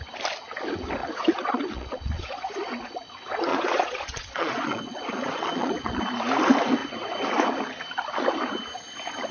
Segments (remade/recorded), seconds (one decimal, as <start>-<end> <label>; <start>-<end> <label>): 0.0-1.0 recorded; 1.0-2.4 remade; 2.4-3.5 recorded; 3.5-6.0 remade; 6.0-9.3 recorded